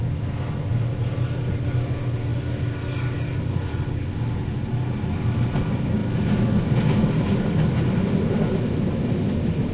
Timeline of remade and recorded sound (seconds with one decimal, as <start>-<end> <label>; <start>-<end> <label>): 0.0-9.7 recorded